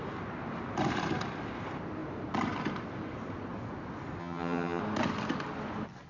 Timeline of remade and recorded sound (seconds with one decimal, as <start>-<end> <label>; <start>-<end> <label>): 0.0-4.2 recorded; 4.2-4.8 remade; 4.8-6.1 recorded